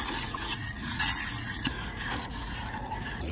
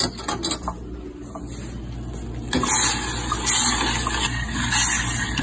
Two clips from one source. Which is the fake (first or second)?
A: first